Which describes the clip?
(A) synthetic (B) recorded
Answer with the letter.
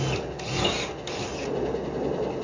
B